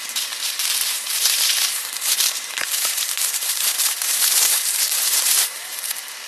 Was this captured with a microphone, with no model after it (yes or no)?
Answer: no